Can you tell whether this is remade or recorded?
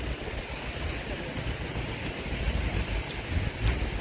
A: recorded